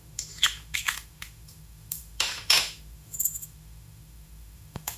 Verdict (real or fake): fake